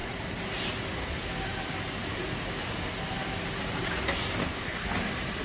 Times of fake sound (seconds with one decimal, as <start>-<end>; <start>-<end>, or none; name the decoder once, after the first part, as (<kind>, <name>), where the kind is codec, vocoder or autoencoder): 4.4-4.9 (codec, HILCodec)